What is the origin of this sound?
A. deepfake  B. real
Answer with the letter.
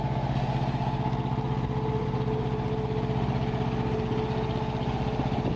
B